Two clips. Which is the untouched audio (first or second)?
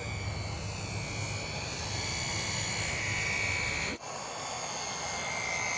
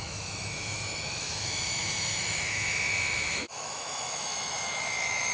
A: first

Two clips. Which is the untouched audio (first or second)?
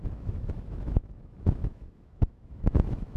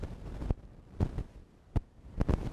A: second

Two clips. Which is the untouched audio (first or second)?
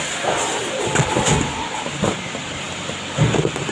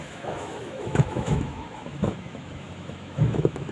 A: first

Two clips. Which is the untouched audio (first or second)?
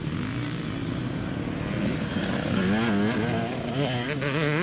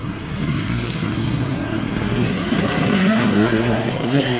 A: first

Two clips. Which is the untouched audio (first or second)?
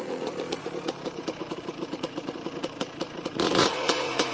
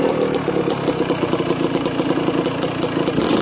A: second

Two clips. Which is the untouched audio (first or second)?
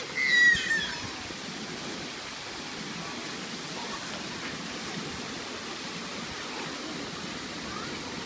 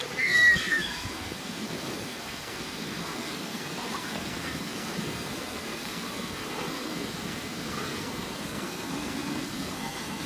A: first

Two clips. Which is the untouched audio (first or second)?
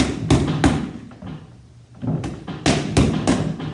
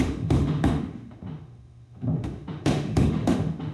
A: first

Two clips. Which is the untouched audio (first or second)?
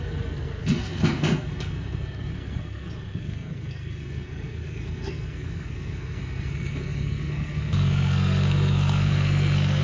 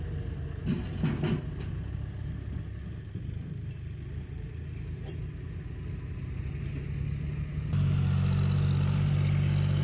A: second